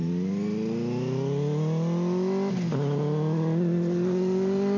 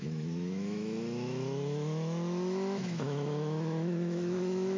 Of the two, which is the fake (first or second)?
second